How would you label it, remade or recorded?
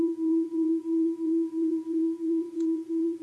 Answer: remade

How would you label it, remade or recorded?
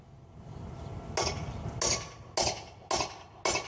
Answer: recorded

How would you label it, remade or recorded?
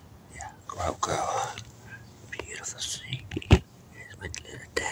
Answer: recorded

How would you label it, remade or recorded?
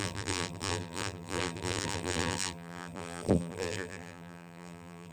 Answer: remade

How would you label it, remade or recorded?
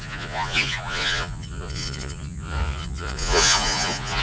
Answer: remade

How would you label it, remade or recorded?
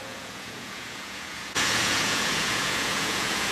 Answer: remade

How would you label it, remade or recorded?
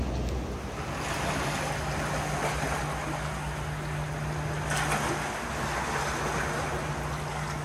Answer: recorded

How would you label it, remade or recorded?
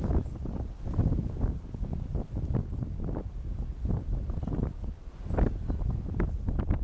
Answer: recorded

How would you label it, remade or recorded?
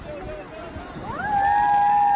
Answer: recorded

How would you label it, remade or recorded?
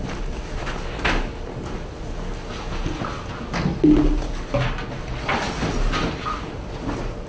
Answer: recorded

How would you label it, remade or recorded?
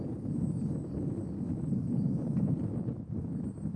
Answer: recorded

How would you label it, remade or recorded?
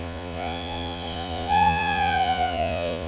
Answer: remade